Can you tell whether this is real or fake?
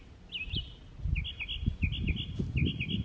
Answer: real